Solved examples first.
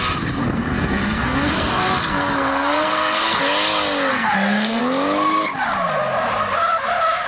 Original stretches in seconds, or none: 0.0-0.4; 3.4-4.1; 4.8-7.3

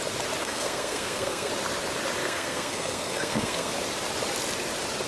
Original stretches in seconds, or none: 0.0-0.4; 1.5-2.2; 3.7-5.1

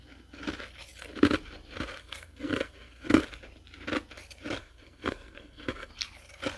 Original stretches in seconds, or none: 0.0-2.0; 3.2-4.6; 5.9-6.6

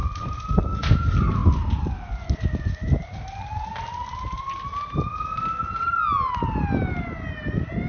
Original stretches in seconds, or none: 0.0-7.9